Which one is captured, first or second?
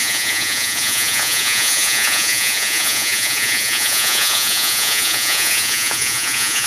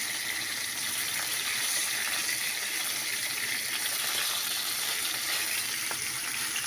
second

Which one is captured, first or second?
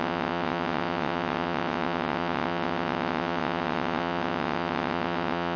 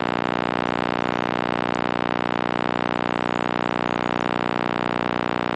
second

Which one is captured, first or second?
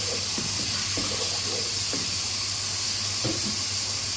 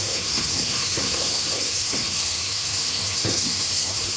first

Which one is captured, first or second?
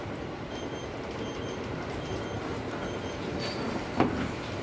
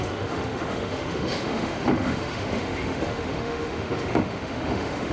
first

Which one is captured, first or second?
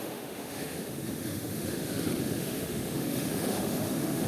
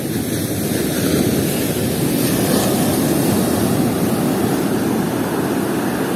second